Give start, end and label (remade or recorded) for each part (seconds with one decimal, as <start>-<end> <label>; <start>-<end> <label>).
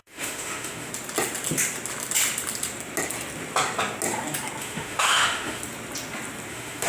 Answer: 0.0-0.9 remade; 0.9-4.6 recorded; 4.6-5.6 remade; 5.6-6.5 recorded; 6.5-6.9 remade